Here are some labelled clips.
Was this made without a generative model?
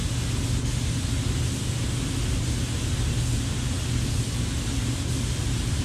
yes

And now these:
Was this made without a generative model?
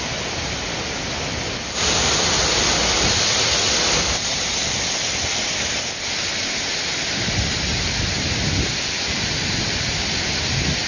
yes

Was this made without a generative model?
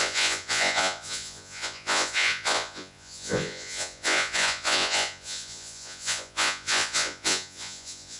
no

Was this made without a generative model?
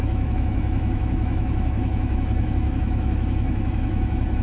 no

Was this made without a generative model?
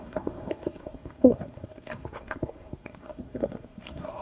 no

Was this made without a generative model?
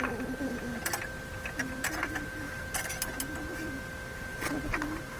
yes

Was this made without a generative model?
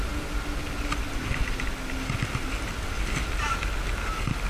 yes